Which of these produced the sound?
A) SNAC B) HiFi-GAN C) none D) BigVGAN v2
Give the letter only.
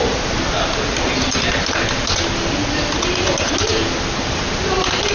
C